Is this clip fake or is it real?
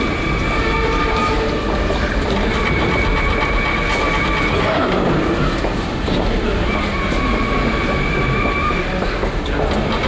real